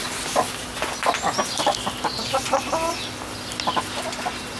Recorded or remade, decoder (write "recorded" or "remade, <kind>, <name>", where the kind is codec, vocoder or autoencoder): recorded